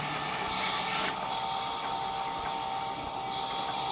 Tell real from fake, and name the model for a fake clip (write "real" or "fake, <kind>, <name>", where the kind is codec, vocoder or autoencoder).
real